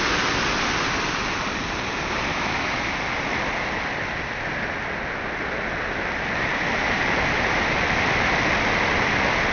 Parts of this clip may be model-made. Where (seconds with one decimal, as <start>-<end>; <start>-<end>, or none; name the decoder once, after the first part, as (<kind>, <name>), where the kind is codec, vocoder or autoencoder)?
2.3-2.8 (autoencoder, DAC-VAE)